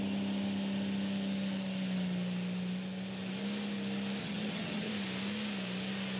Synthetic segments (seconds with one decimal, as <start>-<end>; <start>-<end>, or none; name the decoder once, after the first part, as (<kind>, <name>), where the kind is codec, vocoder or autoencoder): 4.2-4.9 (vocoder, HiFi-GAN)